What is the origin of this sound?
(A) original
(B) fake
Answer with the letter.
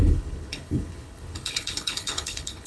B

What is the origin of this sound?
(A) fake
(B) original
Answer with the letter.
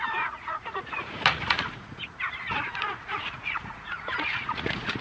A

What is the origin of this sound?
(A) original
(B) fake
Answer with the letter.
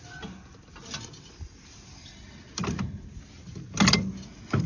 A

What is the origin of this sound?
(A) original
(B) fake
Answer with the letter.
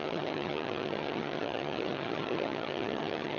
B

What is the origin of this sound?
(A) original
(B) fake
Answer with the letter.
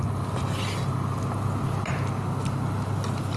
A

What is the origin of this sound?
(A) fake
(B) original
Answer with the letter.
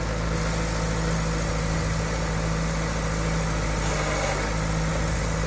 B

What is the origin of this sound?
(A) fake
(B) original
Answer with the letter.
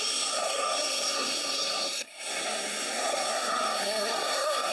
A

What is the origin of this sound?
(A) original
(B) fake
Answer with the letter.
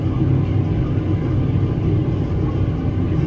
A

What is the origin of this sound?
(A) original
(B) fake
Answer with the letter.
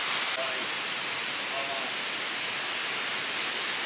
A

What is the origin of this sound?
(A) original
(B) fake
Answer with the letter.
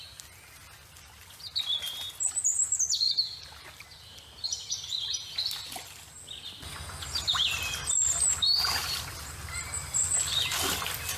A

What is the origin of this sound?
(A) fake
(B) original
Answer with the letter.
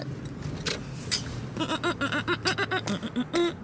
B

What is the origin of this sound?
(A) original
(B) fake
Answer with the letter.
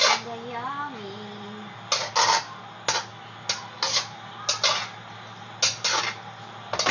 A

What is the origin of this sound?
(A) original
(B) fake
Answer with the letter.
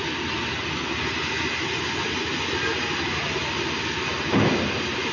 A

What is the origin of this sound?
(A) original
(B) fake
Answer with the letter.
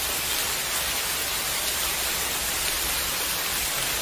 A